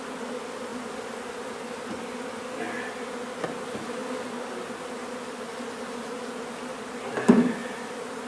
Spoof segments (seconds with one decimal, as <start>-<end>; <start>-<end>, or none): 7.6-8.3